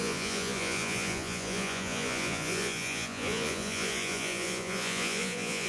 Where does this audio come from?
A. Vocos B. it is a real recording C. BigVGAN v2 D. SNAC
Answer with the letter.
A